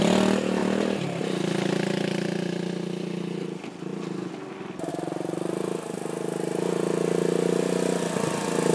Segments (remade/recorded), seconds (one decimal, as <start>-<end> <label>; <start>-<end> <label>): 0.0-8.7 recorded